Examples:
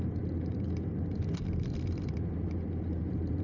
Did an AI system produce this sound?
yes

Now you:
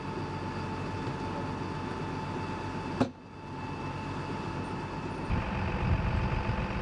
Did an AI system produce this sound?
no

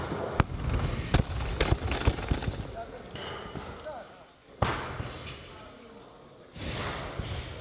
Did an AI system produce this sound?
no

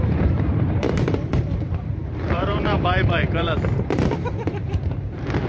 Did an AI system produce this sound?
yes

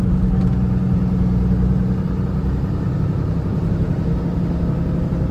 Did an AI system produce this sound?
no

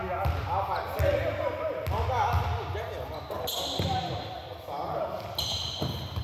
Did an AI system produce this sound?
no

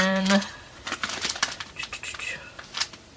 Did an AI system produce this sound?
yes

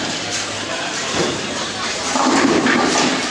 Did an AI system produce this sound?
yes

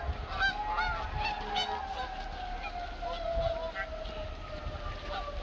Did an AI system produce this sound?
no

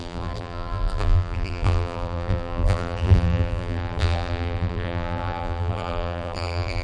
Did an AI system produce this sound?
yes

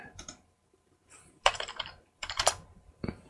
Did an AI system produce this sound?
yes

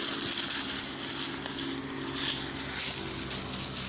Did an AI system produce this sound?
no